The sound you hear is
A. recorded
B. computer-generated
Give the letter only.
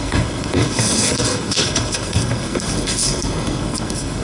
B